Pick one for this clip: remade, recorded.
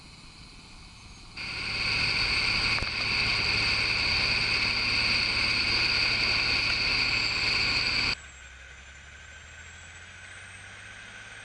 recorded